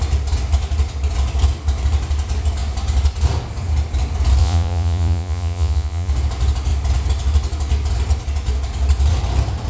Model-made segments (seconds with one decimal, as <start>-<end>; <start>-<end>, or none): 4.4-6.1